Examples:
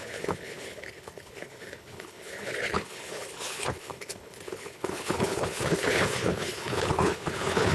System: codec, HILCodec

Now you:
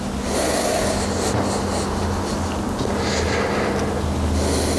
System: none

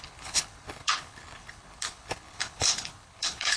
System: codec, HILCodec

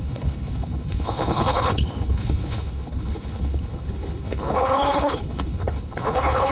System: codec, HILCodec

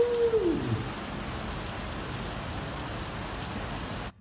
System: none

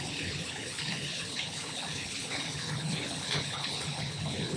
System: codec, HILCodec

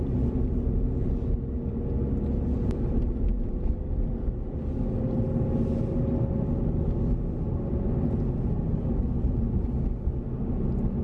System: none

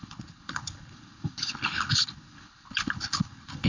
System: codec, HILCodec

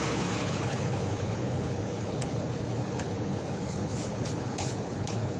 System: codec, HILCodec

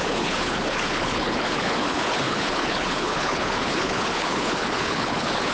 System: codec, HILCodec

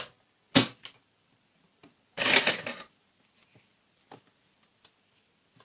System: none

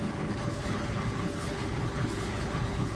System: codec, HILCodec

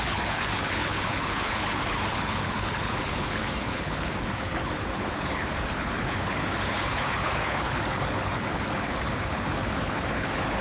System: codec, HILCodec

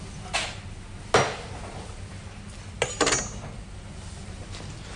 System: none